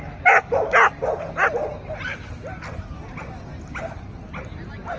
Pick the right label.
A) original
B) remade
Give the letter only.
A